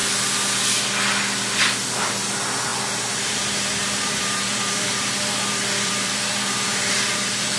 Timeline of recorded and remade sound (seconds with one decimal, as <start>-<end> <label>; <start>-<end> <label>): 0.0-2.7 recorded; 2.7-7.6 remade